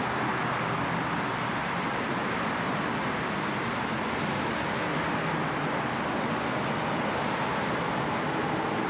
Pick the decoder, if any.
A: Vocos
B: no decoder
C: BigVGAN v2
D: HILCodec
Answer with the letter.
B